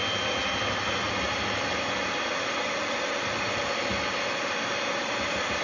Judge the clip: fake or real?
real